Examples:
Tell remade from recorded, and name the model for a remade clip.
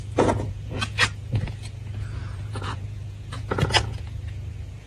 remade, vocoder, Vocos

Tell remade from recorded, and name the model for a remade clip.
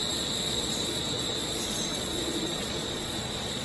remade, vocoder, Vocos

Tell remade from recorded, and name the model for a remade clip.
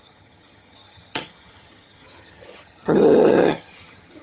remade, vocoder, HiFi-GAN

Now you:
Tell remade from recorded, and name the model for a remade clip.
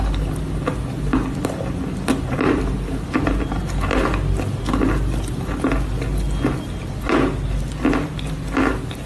recorded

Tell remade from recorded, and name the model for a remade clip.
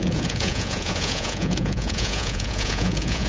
remade, vocoder, Vocos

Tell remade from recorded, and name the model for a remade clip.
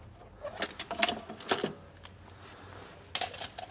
recorded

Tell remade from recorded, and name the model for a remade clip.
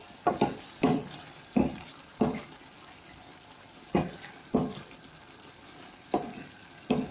recorded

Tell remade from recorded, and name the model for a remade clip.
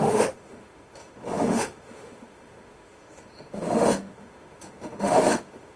remade, autoencoder, DAC-VAE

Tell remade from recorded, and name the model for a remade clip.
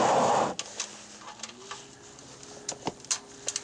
recorded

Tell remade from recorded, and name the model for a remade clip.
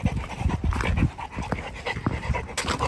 recorded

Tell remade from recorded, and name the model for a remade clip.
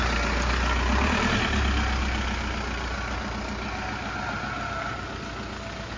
recorded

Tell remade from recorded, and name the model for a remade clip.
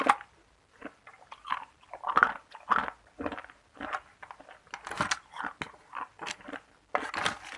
recorded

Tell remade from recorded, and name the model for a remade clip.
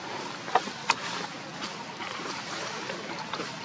recorded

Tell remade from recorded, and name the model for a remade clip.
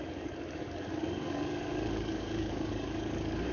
remade, codec, DAC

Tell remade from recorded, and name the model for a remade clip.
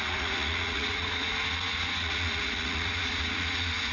remade, vocoder, Vocos